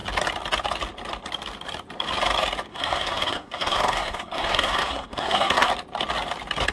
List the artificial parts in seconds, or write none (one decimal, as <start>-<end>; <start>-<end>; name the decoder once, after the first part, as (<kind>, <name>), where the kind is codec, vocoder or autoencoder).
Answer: 2.7-5.7 (codec, SNAC)